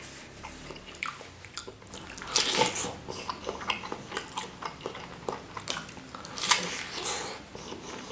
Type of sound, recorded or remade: recorded